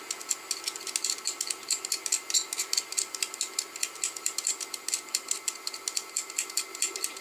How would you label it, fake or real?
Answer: real